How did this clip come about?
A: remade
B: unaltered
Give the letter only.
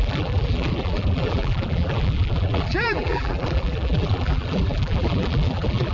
A